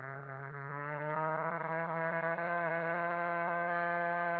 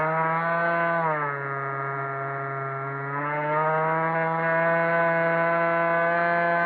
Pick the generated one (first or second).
first